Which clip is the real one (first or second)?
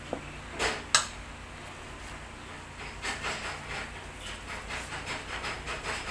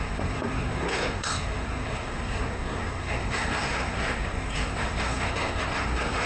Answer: first